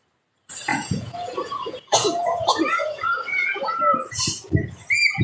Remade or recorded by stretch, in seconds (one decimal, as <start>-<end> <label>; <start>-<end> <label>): 0.0-0.7 recorded; 0.7-3.8 remade; 3.8-5.2 recorded